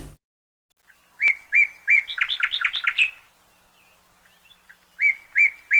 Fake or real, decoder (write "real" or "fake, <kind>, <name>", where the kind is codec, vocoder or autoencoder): real